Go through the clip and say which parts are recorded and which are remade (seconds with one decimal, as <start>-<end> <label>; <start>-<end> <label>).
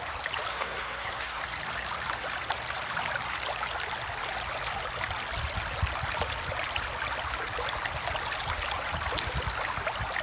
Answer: 0.0-0.5 recorded; 0.5-1.4 remade; 1.4-10.2 recorded